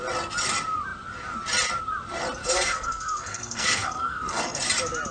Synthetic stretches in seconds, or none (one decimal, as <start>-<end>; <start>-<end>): 2.4-4.6